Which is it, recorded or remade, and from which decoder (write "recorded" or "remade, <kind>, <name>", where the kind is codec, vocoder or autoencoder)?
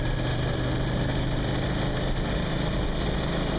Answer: recorded